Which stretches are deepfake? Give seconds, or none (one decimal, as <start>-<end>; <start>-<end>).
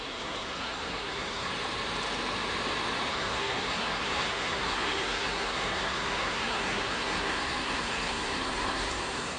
0.0-1.5; 3.1-9.4